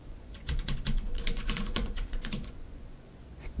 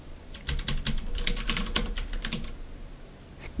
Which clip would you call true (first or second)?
second